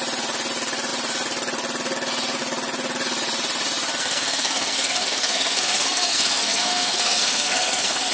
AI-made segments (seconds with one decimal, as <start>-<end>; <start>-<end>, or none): 4.0-8.1